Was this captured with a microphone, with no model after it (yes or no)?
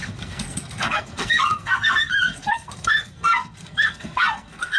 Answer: no